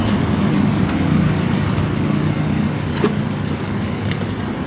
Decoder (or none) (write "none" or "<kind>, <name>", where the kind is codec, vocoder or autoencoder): codec, DAC